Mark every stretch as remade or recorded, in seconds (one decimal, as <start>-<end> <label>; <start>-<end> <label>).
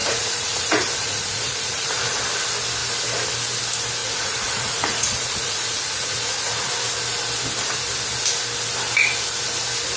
0.0-2.2 remade; 2.2-4.0 recorded; 4.0-6.7 remade; 6.7-10.0 recorded